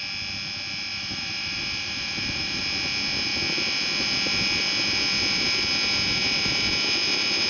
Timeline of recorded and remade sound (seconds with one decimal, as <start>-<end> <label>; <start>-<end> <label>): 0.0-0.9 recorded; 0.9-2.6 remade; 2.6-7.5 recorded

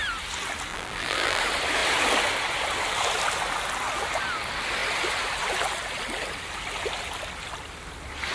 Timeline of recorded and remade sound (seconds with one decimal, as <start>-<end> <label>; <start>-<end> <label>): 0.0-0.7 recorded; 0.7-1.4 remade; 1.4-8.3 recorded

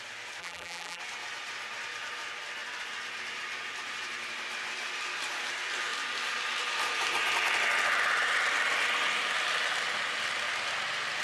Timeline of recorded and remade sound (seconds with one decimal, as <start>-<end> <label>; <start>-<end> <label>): 0.0-0.4 recorded; 0.4-1.0 remade; 1.0-11.2 recorded

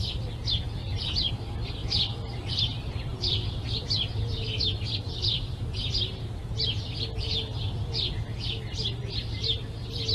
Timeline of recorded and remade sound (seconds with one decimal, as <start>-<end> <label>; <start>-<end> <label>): 0.0-0.8 recorded; 0.8-1.3 remade; 1.3-1.8 recorded; 1.8-2.6 remade; 2.6-3.1 recorded; 3.1-6.1 remade; 6.1-10.1 recorded

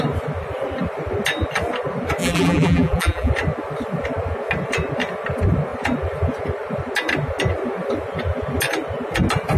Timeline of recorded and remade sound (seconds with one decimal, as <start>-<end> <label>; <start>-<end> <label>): 0.0-2.2 recorded; 2.2-3.3 remade; 3.3-9.6 recorded

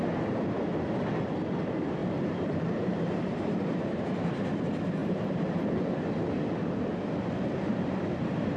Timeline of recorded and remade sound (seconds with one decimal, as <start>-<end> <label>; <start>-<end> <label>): 0.0-2.0 recorded; 2.0-4.0 remade; 4.0-5.0 recorded; 5.0-5.7 remade; 5.7-7.7 recorded; 7.7-8.6 remade

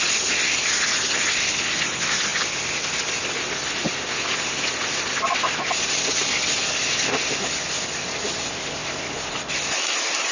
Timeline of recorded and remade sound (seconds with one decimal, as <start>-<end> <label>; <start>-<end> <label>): 0.0-2.3 recorded; 2.3-2.9 remade; 2.9-10.3 recorded